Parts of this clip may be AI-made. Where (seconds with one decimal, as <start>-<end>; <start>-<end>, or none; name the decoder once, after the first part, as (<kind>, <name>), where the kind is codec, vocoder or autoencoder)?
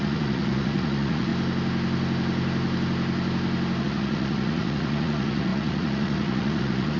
0.0-1.3 (vocoder, Vocos); 3.8-7.0